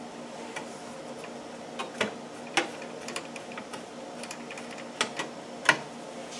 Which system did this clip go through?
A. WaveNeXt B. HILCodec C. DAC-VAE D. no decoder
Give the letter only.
D